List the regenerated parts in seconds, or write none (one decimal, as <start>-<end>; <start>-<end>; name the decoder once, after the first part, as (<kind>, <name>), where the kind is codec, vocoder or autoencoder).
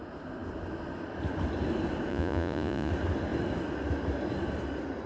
2.1-2.9 (vocoder, Vocos)